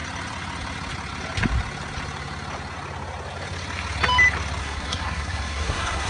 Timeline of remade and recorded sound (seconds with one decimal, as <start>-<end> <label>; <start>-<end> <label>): 0.0-4.6 recorded; 4.6-6.1 remade